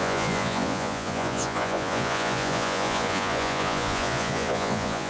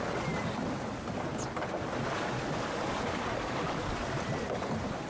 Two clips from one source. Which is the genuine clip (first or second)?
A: second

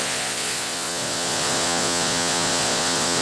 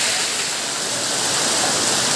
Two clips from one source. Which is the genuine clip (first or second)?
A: second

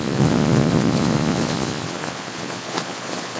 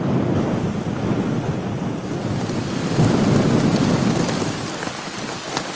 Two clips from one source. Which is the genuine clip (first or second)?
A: second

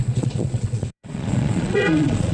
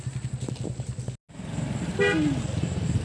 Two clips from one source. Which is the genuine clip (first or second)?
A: second